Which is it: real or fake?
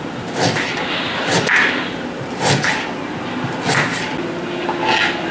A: real